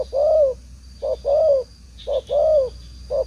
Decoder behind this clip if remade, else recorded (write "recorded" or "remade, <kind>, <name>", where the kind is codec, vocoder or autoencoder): recorded